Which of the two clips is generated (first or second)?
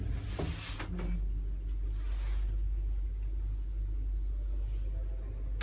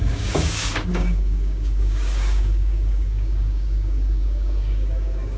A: second